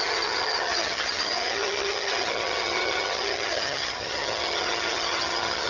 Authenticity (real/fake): fake